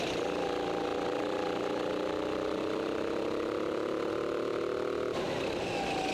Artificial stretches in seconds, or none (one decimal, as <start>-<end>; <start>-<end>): none